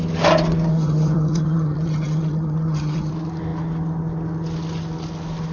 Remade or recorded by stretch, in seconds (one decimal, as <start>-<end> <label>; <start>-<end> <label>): 0.0-0.7 recorded; 0.7-3.1 remade; 3.1-5.5 recorded